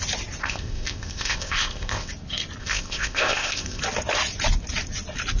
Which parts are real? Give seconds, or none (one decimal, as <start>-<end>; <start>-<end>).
0.0-0.4; 2.1-2.6; 3.8-5.4